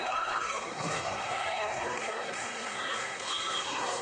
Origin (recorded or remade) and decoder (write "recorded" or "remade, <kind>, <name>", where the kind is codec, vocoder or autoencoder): remade, codec, SNAC